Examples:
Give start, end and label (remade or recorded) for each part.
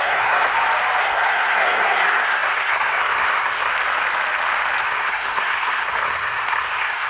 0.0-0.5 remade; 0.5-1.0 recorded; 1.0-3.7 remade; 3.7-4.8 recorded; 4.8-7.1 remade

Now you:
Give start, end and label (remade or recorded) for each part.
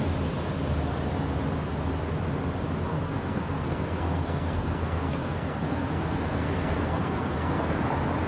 0.0-2.9 recorded; 2.9-7.7 remade; 7.7-8.3 recorded